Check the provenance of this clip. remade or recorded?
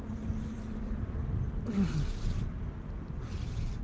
recorded